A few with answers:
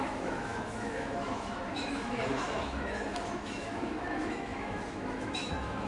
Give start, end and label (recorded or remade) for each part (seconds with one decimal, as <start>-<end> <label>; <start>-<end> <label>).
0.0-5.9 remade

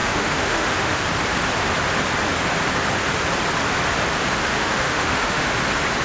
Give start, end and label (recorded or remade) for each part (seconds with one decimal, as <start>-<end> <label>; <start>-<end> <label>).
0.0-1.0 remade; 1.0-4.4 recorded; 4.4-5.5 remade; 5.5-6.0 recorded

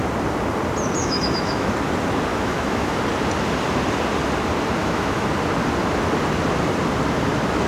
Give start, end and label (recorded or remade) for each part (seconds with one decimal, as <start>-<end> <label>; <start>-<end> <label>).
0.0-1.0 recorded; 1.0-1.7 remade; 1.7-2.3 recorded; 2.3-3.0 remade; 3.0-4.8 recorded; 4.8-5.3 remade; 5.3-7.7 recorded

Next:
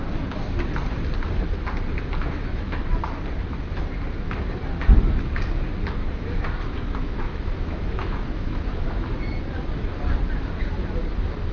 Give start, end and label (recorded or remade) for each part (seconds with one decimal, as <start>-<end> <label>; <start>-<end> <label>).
0.0-2.2 recorded; 2.2-2.8 remade; 2.8-6.0 recorded; 6.0-9.3 remade; 9.3-11.5 recorded

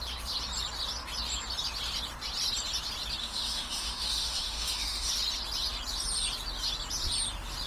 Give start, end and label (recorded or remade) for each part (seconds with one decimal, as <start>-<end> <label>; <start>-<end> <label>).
0.0-3.2 recorded; 3.2-5.1 remade; 5.1-7.7 recorded